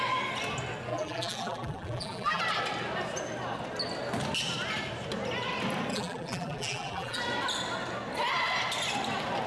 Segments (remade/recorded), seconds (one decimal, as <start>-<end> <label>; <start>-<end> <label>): 0.0-0.9 recorded; 0.9-2.4 remade; 2.4-5.9 recorded; 5.9-7.2 remade; 7.2-9.5 recorded